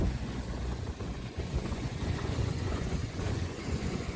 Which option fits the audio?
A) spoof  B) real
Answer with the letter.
A